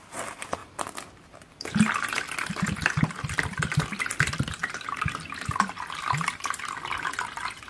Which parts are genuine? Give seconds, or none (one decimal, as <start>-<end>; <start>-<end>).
0.0-7.7